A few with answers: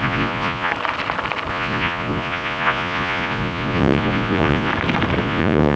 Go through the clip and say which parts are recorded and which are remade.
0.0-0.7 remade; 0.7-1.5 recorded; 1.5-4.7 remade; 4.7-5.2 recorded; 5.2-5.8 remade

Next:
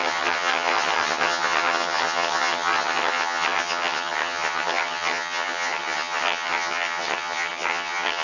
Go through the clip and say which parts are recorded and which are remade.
0.0-8.2 remade

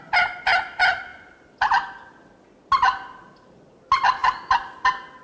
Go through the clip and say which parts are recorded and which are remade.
0.0-5.2 recorded

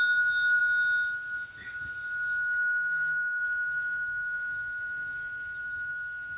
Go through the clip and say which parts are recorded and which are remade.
0.0-2.4 recorded; 2.4-6.4 remade

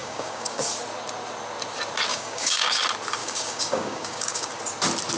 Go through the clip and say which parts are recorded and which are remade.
0.0-0.7 remade; 0.7-2.1 recorded; 2.1-2.8 remade; 2.8-3.2 recorded; 3.2-4.5 remade; 4.5-5.2 recorded

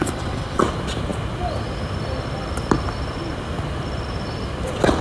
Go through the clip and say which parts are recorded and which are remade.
0.0-0.6 remade; 0.6-5.0 recorded